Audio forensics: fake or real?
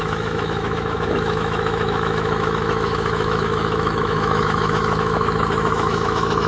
fake